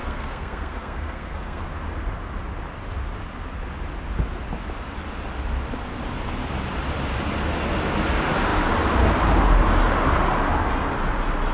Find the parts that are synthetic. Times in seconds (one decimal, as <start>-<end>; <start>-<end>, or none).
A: 0.0-1.6